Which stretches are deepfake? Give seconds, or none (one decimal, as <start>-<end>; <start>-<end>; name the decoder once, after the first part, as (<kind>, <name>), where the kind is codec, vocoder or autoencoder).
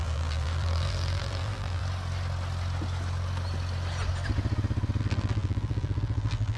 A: 0.0-1.8 (vocoder, BigVGAN v2); 5.0-6.6